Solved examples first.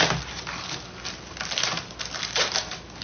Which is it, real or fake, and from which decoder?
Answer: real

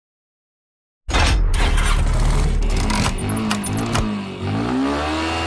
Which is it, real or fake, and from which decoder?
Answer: real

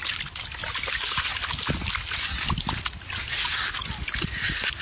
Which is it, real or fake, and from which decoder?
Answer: real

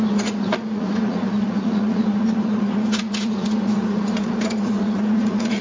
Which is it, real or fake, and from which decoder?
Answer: fake, vocoder, Vocos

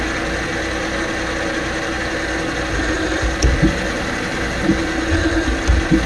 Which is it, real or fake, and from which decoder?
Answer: real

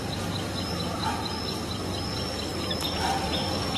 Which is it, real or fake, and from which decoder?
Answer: fake, vocoder, BigVGAN v2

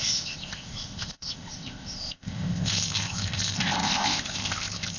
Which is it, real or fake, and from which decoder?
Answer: fake, codec, ZipCodec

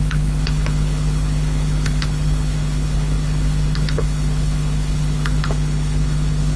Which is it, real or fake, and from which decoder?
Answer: fake, codec, HILCodec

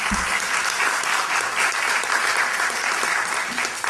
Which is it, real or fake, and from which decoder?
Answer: real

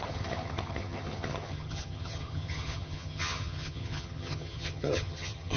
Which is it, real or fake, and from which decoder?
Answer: fake, vocoder, HiFi-GAN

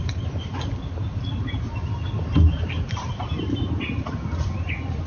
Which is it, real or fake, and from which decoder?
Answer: real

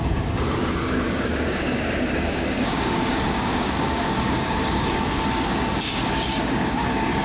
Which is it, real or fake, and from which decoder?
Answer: fake, codec, DAC